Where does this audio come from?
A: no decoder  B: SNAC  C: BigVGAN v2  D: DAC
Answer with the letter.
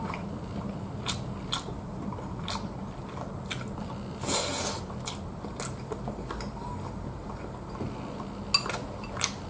A